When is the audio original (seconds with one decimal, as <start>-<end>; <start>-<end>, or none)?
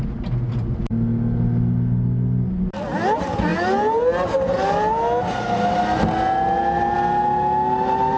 0.0-8.2